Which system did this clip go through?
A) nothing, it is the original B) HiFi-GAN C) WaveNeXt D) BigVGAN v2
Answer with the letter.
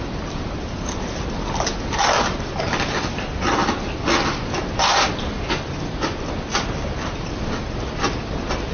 A